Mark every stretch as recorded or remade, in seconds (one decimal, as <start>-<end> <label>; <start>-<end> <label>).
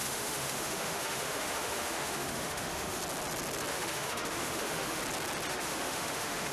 0.0-3.0 remade; 3.0-3.7 recorded; 3.7-5.0 remade; 5.0-5.5 recorded; 5.5-6.5 remade